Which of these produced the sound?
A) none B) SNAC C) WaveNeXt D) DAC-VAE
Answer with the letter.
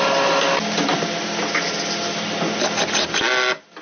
A